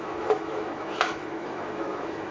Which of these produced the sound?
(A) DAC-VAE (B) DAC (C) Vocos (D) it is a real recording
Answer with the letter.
A